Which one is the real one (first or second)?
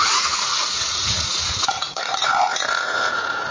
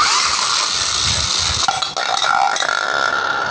second